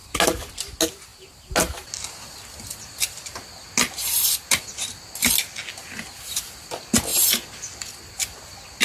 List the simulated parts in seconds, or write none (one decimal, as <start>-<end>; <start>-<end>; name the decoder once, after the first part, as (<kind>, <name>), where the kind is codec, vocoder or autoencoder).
none